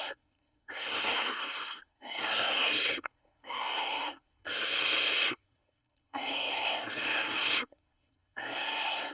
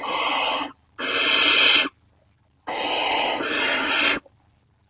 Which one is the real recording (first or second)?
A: second